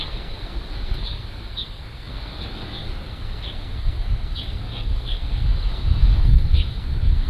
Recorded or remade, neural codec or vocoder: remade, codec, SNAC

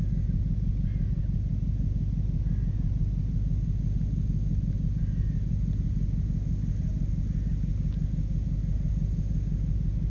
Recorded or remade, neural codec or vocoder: recorded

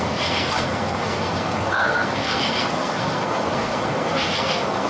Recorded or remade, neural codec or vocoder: remade, codec, SNAC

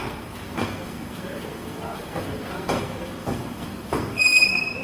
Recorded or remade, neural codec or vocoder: remade, codec, SNAC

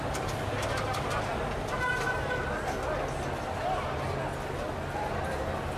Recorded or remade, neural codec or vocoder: recorded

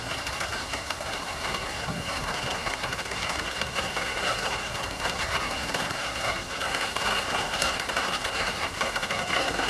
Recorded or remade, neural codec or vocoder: remade, codec, SNAC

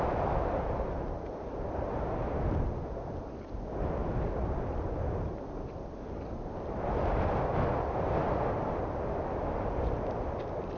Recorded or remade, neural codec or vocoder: recorded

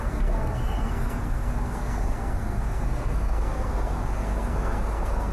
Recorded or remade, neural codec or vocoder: remade, codec, SNAC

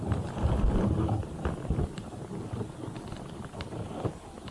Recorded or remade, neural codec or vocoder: recorded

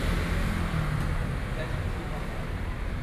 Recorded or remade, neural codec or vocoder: recorded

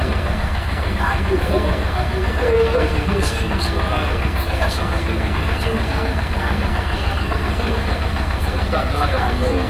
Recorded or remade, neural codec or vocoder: remade, codec, SNAC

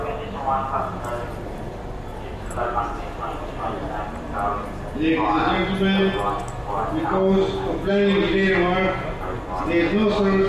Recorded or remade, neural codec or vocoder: recorded